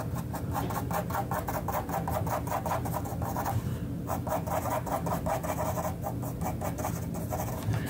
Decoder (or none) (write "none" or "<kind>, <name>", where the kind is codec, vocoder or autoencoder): none